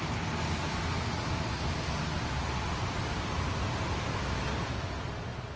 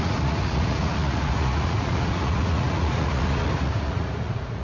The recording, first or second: first